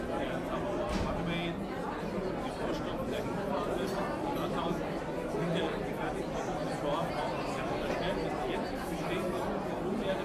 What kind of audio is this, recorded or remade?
recorded